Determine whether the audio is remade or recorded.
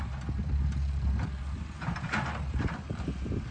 recorded